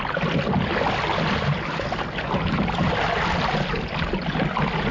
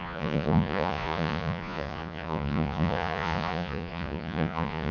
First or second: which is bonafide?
first